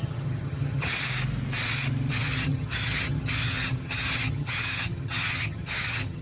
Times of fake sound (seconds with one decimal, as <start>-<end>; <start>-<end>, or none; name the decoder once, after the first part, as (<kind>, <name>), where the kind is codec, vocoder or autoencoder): 0.0-0.9 (vocoder, HiFi-GAN); 2.1-6.2